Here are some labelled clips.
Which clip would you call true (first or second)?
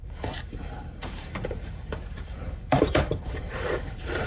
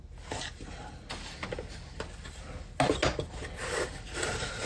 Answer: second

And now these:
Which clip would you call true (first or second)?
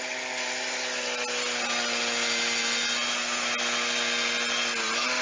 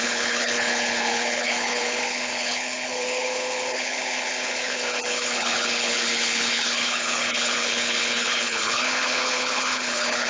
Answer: first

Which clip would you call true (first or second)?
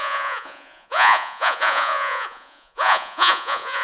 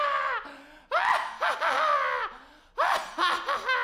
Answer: second